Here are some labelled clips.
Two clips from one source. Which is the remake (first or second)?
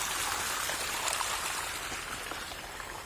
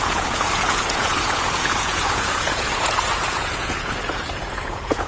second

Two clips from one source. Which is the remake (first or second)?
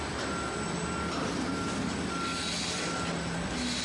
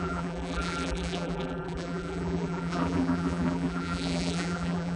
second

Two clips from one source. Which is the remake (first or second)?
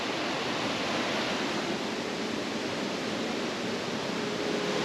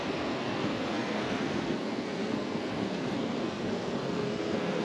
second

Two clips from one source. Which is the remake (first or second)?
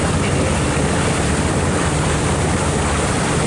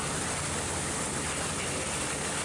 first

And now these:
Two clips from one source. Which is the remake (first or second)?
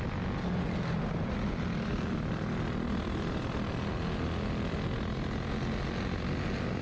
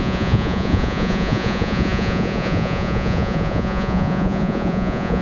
second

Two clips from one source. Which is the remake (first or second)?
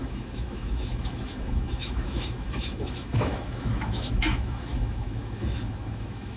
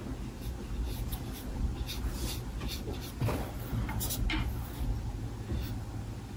first